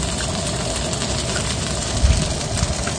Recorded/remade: remade